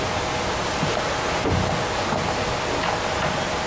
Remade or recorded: recorded